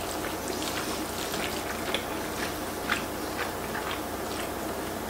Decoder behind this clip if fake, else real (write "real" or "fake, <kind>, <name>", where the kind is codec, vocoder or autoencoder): real